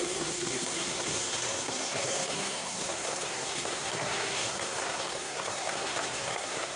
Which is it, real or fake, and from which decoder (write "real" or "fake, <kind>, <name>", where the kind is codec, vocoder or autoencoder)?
fake, codec, SNAC